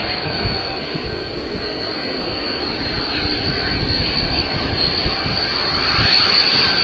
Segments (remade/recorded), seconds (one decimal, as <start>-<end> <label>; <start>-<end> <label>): 0.0-2.6 remade; 2.6-6.8 recorded